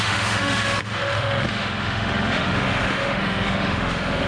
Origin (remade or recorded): remade